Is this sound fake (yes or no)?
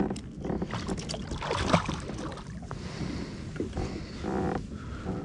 no